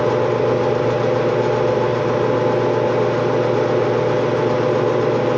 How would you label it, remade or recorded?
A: recorded